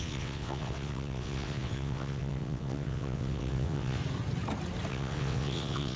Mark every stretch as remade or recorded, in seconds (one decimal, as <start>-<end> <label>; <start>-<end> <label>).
0.0-4.0 remade; 4.0-4.9 recorded; 4.9-6.0 remade